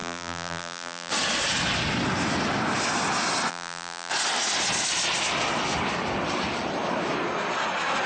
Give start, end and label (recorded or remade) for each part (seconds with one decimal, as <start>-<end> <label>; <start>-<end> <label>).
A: 0.0-1.1 remade; 1.1-3.5 recorded; 3.5-4.1 remade; 4.1-8.1 recorded